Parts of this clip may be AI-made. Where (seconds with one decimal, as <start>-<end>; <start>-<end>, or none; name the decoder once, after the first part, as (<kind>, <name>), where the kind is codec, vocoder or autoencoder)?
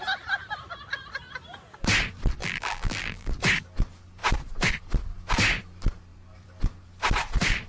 2.4-3.3 (vocoder, BigVGAN v2)